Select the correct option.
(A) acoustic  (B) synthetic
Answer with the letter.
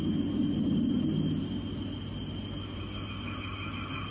A